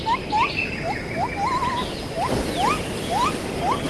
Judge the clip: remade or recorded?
recorded